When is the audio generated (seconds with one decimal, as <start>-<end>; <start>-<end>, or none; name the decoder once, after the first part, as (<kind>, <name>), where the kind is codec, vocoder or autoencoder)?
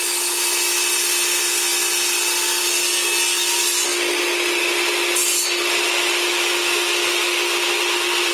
none